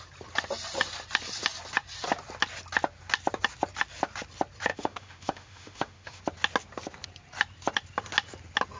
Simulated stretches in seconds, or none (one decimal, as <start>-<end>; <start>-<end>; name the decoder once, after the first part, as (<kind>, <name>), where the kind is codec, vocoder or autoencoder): 4.7-6.2 (autoencoder, DAC-VAE)